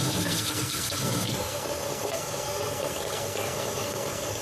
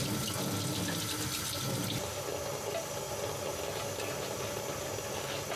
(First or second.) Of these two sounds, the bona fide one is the second